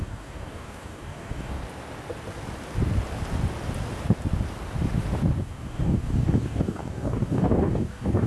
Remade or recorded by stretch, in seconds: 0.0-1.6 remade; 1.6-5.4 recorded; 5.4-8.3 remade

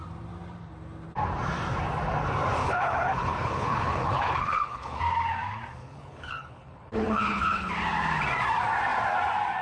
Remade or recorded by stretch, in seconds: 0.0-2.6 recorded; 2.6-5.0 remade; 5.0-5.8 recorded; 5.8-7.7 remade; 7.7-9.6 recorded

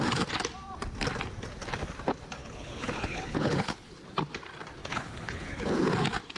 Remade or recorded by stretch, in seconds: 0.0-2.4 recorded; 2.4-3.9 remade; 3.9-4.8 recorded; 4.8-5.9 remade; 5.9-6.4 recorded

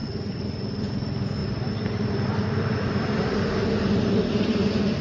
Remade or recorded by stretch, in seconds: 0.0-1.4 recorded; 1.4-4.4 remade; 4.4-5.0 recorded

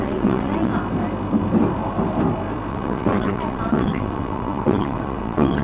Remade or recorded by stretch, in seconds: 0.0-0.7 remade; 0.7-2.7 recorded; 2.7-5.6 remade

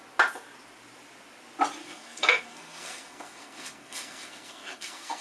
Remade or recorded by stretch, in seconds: 0.0-1.8 recorded; 1.8-5.2 remade

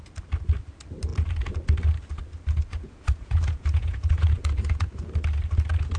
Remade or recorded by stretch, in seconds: 0.0-2.7 recorded; 2.7-5.1 remade; 5.1-6.0 recorded

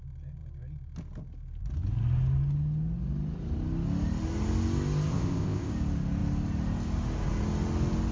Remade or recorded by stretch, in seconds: 0.0-5.1 recorded; 5.1-5.7 remade; 5.7-8.1 recorded